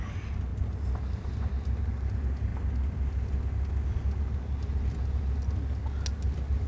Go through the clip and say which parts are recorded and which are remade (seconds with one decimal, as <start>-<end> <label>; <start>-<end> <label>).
0.0-6.7 recorded